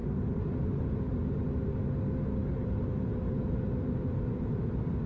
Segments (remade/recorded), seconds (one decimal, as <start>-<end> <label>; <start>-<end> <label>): 0.0-2.4 recorded; 2.4-4.4 remade; 4.4-5.1 recorded